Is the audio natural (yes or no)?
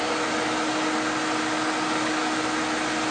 yes